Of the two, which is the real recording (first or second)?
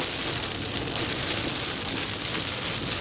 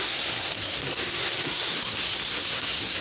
first